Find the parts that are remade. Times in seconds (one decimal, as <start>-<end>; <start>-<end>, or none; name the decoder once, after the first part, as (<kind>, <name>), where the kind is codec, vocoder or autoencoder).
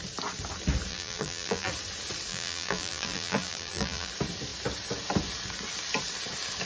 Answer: 0.9-1.7 (vocoder, BigVGAN v2); 2.3-4.1